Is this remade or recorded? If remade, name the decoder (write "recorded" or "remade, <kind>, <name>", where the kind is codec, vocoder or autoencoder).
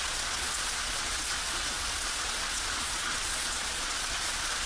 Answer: remade, vocoder, Vocos